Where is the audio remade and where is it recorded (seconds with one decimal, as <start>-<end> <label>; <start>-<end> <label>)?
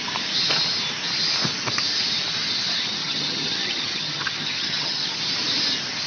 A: 0.0-3.0 recorded; 3.0-5.2 remade; 5.2-6.1 recorded